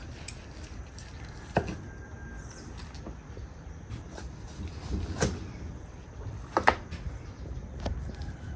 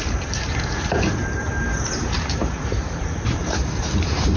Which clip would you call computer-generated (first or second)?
second